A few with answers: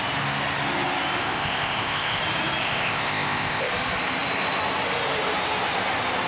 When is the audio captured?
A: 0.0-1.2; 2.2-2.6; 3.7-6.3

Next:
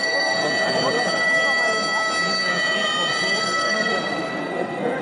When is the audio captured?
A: 0.4-3.4; 3.9-4.4

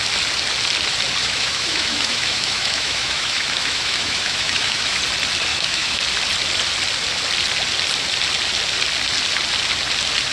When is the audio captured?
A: 0.0-1.2; 5.0-5.5; 6.0-10.3

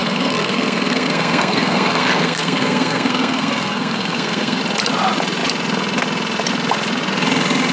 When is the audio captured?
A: 4.6-7.7